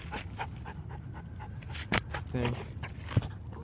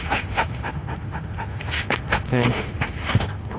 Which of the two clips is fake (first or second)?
second